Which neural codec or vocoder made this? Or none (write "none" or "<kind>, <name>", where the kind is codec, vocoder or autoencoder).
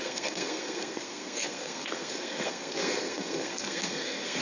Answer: codec, SNAC